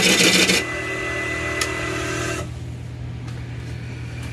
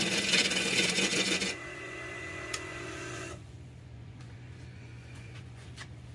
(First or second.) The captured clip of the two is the first